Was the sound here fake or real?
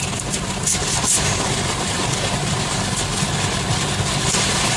real